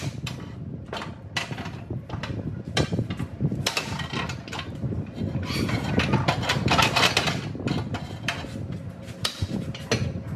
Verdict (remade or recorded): recorded